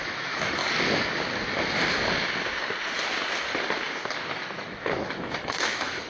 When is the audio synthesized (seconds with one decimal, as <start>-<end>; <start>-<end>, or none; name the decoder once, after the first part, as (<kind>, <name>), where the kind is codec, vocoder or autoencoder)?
0.0-0.6 (autoencoder, DAC-VAE); 4.3-6.1